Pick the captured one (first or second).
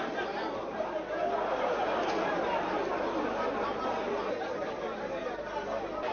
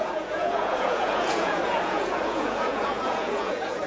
first